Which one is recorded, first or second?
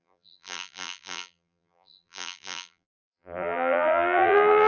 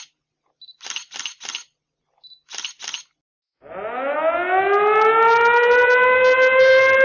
second